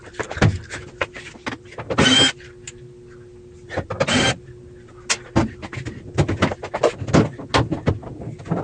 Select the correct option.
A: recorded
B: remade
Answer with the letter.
A